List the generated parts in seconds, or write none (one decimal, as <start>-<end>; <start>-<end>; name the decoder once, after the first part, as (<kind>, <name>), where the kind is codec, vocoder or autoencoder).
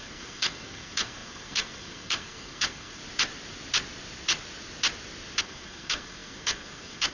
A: 0.0-3.0 (codec, SNAC); 5.4-7.1